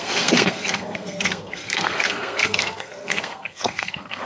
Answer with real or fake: fake